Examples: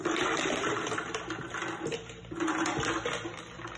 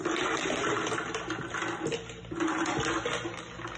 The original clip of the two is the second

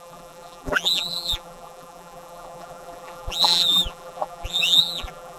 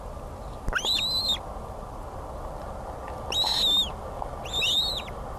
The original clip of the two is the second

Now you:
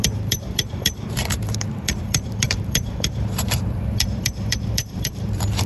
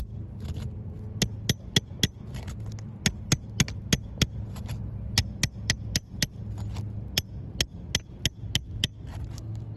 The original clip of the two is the second